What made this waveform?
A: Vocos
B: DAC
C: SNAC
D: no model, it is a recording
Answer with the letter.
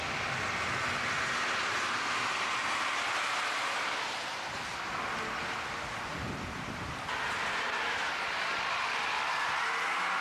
D